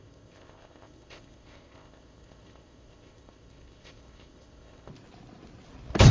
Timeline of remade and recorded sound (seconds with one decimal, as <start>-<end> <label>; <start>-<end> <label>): 0.0-4.9 remade; 4.9-6.1 recorded